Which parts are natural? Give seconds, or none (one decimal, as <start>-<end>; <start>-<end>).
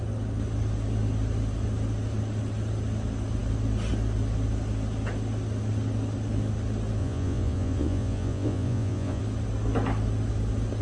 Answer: 0.0-7.0; 9.2-10.8